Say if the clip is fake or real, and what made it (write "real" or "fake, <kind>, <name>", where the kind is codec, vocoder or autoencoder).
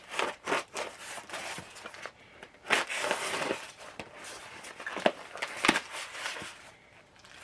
real